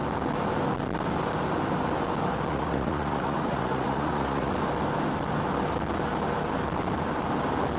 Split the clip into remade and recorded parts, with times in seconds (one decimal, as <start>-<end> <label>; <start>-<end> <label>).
0.0-2.5 recorded; 2.5-4.5 remade; 4.5-7.8 recorded